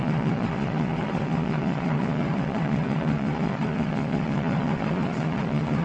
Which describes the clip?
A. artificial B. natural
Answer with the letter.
A